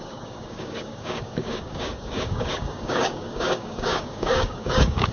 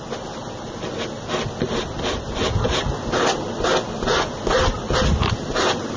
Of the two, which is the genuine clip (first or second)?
second